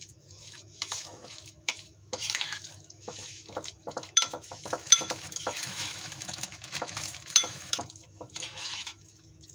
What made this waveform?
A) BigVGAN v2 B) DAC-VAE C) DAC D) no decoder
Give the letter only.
B